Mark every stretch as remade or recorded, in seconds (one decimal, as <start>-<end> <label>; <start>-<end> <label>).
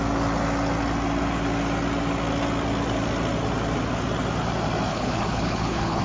0.0-4.9 recorded; 4.9-6.0 remade